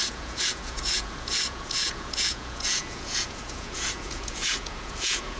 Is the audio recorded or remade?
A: remade